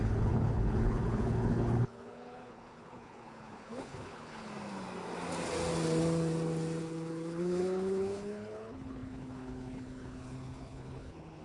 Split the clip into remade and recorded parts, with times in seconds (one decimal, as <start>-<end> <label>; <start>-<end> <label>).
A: 0.0-4.5 remade; 4.5-6.8 recorded; 6.8-11.4 remade